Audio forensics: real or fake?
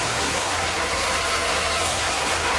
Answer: fake